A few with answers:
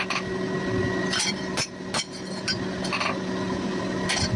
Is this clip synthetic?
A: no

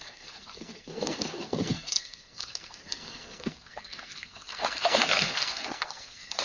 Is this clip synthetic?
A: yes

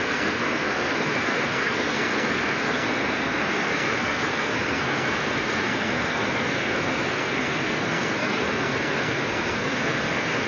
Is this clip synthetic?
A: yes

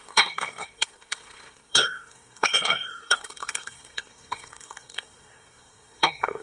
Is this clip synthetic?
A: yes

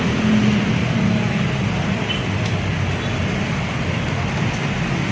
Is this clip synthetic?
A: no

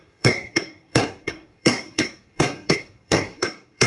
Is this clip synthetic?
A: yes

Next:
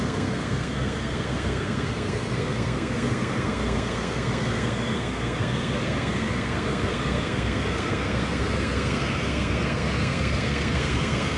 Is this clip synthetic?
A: yes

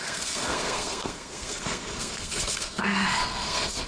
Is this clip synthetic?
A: yes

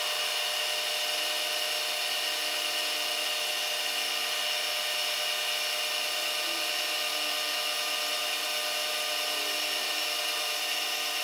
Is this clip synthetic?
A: no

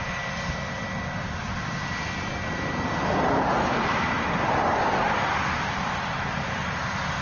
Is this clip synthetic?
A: no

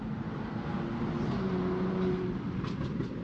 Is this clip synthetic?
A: no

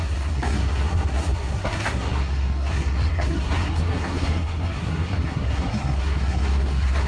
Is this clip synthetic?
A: yes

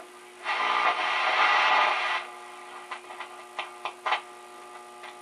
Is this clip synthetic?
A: no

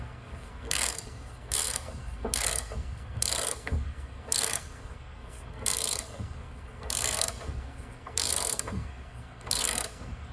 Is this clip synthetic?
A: yes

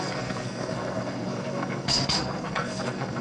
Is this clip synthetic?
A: yes